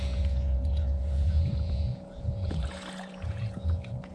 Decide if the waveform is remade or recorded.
remade